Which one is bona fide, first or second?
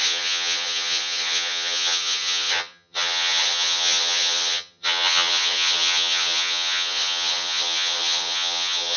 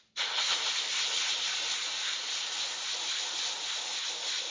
second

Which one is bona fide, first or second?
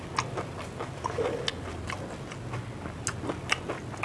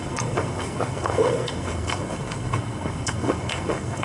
first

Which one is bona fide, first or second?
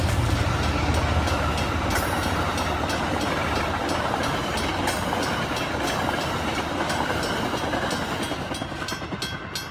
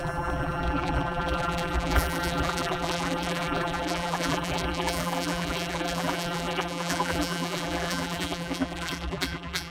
first